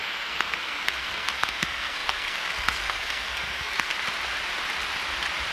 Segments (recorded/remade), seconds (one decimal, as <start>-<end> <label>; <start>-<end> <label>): 0.0-3.9 remade; 3.9-5.5 recorded